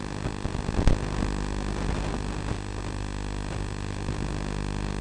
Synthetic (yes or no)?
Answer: no